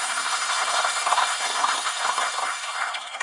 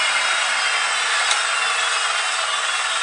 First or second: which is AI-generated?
first